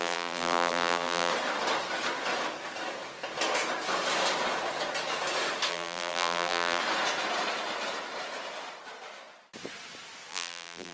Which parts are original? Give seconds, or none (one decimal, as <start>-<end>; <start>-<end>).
1.3-5.7; 6.8-10.3